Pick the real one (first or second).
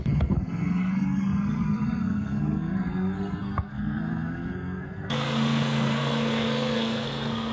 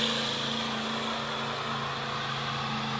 second